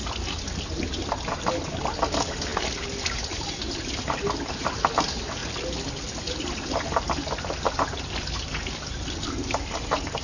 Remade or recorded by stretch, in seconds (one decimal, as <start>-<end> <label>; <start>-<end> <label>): 0.0-10.2 recorded

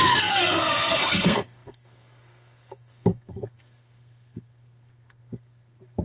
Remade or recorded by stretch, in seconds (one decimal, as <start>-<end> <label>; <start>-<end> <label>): 0.0-6.0 remade

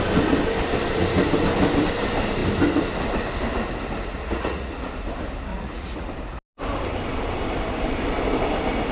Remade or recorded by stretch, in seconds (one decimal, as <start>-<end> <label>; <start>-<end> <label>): 0.0-4.2 recorded; 4.2-4.9 remade; 4.9-5.5 recorded; 5.5-6.1 remade; 6.1-8.9 recorded

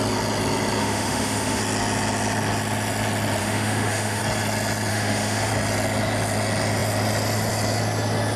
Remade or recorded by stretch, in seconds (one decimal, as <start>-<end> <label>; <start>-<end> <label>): 0.0-0.8 recorded; 0.8-1.6 remade; 1.6-3.4 recorded; 3.4-4.2 remade; 4.2-4.9 recorded; 4.9-5.5 remade; 5.5-8.4 recorded

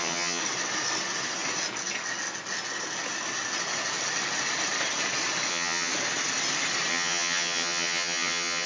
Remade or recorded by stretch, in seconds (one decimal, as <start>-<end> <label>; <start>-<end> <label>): 0.0-0.4 remade; 0.4-5.5 recorded; 5.5-5.9 remade; 5.9-6.9 recorded; 6.9-8.7 remade

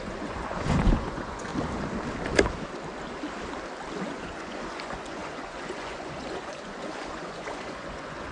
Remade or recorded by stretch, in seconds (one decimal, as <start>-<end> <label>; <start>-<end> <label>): 0.0-1.5 remade; 1.5-4.0 recorded; 4.0-8.3 remade

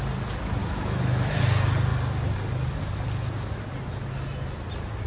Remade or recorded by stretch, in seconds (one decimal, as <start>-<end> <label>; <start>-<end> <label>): 0.0-0.6 recorded; 0.6-1.4 remade; 1.4-5.1 recorded

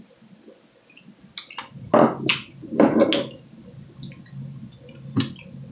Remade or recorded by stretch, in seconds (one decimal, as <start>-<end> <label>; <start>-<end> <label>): 0.0-5.7 recorded